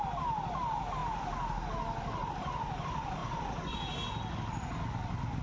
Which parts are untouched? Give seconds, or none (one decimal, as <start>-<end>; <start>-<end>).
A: 0.0-5.4